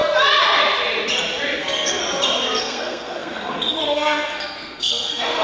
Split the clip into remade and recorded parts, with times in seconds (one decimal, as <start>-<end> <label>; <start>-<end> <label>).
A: 0.0-1.6 recorded; 1.6-2.0 remade; 2.0-2.6 recorded; 2.6-5.4 remade